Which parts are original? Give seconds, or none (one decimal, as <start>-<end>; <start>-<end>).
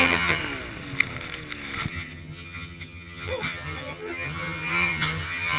0.4-1.9